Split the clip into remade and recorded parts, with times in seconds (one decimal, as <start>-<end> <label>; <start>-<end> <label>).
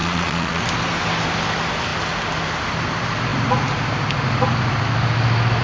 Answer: 0.0-0.6 remade; 0.6-5.6 recorded